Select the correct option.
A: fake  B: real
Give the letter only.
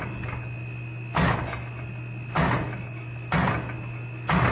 B